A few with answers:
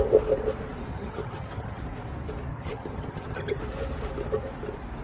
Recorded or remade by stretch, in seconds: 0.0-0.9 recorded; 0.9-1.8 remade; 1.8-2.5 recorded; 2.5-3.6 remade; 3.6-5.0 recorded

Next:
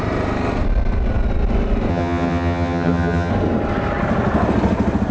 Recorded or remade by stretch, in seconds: 0.0-1.9 recorded; 1.9-3.3 remade; 3.3-5.1 recorded

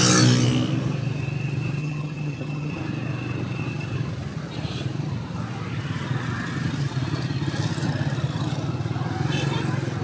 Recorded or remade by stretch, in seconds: 0.0-1.8 recorded; 1.8-2.7 remade; 2.7-10.0 recorded

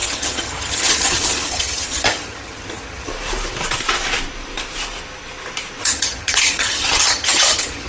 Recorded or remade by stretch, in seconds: 0.0-3.1 remade; 3.1-5.8 recorded; 5.8-7.9 remade